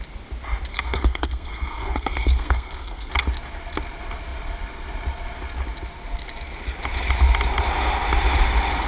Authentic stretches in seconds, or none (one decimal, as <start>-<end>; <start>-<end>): 0.0-0.7; 3.1-8.9